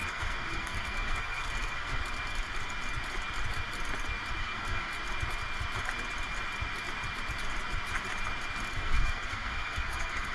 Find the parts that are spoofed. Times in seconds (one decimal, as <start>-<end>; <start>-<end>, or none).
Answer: 0.0-2.0; 4.4-4.9; 8.7-10.3